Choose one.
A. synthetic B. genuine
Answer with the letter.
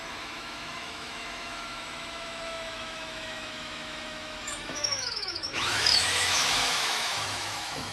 A